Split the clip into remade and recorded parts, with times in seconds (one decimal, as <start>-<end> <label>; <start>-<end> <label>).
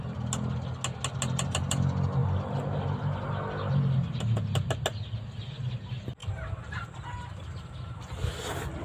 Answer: 0.0-8.8 recorded